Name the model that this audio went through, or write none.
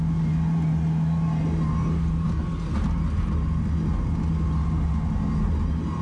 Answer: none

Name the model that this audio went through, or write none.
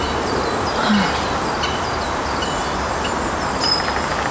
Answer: none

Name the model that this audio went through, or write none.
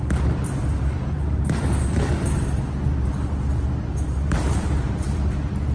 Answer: vocoder, BigVGAN v2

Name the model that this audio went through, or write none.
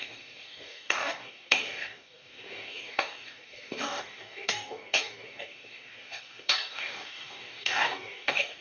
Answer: codec, DAC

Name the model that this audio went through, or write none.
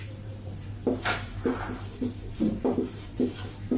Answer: vocoder, BigVGAN v2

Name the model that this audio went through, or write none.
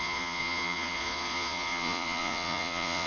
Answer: vocoder, Vocos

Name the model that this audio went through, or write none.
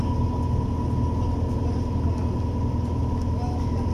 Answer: none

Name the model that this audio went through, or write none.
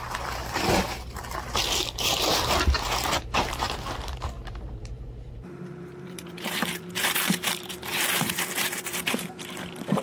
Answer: vocoder, BigVGAN v2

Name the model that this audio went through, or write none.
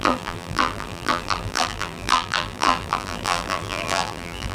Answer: vocoder, BigVGAN v2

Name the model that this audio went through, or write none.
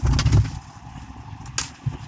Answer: none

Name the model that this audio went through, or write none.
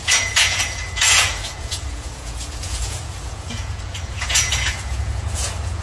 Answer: vocoder, Vocos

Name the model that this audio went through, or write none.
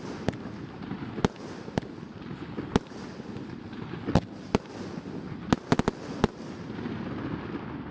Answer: none